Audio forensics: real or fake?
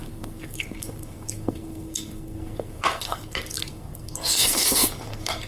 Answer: fake